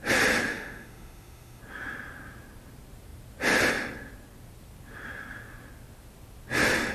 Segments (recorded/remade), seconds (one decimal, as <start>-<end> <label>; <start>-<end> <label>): 0.0-0.5 recorded; 0.5-1.6 remade; 1.6-6.9 recorded

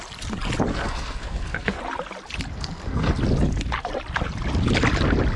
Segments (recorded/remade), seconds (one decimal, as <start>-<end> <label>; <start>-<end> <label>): 0.0-0.7 recorded; 0.7-1.8 remade; 1.8-2.5 recorded; 2.5-3.1 remade; 3.1-5.4 recorded

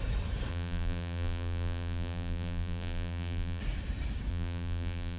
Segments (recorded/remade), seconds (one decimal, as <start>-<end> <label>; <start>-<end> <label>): 0.0-0.5 recorded; 0.5-3.6 remade; 3.6-4.3 recorded; 4.3-5.2 remade

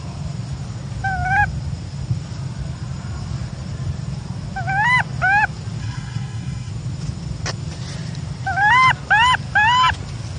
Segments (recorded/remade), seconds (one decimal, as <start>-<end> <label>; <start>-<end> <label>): 0.0-5.8 recorded; 5.8-6.7 remade; 6.7-10.4 recorded